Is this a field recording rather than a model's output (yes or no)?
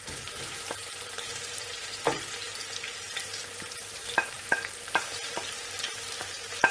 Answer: no